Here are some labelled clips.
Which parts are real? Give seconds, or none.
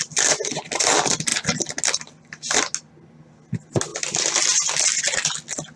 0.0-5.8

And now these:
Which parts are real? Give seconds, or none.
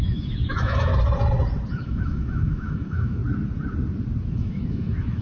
0.9-1.7; 3.2-4.3